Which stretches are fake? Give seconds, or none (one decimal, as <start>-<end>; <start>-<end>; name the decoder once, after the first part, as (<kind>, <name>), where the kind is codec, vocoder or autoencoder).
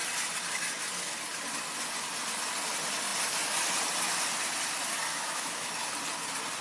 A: 5.1-5.7 (autoencoder, DAC-VAE)